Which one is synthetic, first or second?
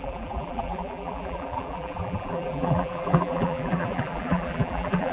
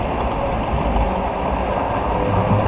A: first